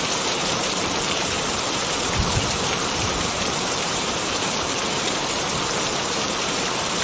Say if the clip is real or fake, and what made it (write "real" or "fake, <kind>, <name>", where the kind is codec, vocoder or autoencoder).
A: fake, vocoder, BigVGAN v2